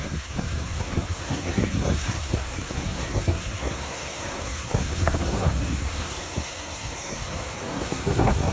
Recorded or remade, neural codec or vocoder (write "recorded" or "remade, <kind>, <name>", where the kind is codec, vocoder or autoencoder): remade, codec, SNAC